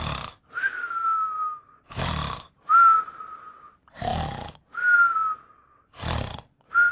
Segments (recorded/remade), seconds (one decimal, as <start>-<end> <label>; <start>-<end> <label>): 0.0-6.9 recorded